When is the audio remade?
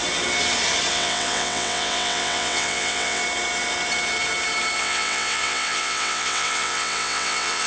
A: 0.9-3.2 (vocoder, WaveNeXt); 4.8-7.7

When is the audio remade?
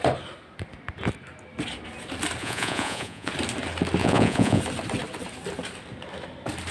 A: 2.4-3.3 (vocoder, Vocos); 4.0-4.6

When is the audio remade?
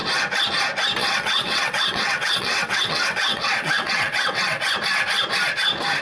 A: 1.0-4.6 (vocoder, WaveNeXt)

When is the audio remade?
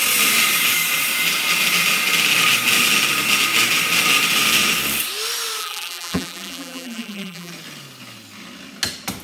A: 5.6-7.5 (vocoder, BigVGAN v2)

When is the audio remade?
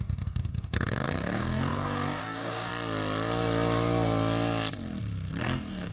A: 0.0-2.7 (codec, DAC); 5.4-5.9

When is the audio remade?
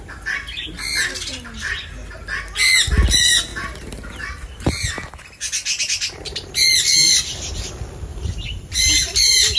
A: 3.5-5.1 (vocoder, BigVGAN v2); 8.1-9.6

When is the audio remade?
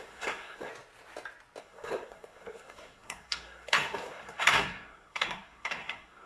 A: 0.0-0.7 (codec, SNAC); 1.6-6.3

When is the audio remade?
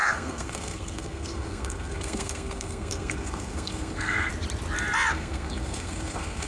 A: 0.0-4.3 (codec, SNAC); 5.1-6.5